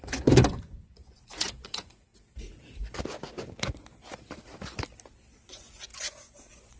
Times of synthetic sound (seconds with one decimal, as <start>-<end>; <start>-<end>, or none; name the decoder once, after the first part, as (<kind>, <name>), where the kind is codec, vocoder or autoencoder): 0.0-2.1 (vocoder, Vocos); 5.5-6.8